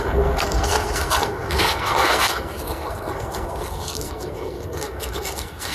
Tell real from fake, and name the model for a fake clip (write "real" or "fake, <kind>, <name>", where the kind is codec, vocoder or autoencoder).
fake, codec, SNAC